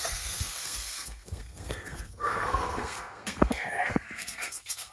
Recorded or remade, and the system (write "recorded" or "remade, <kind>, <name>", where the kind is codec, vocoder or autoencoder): remade, codec, SNAC